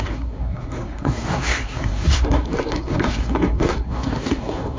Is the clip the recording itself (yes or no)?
no